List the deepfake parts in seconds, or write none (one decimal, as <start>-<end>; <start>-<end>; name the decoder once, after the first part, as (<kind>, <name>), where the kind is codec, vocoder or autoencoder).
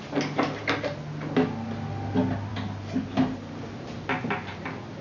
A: none